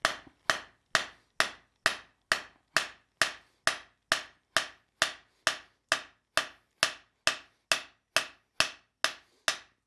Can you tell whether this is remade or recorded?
recorded